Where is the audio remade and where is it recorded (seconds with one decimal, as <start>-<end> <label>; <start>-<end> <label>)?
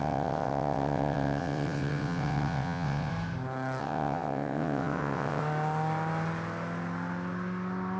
0.0-3.1 remade; 3.1-3.8 recorded; 3.8-5.4 remade; 5.4-8.0 recorded